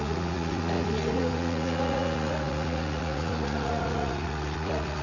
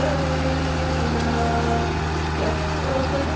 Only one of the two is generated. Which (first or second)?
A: first